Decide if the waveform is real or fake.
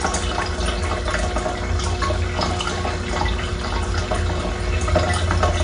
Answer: real